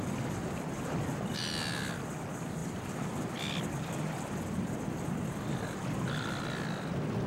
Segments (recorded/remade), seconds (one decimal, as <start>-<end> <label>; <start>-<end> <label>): 0.0-2.6 recorded; 2.6-3.6 remade; 3.6-7.3 recorded